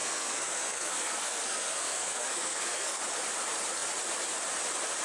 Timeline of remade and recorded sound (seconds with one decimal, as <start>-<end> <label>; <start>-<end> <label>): 0.0-3.0 remade; 3.0-5.0 recorded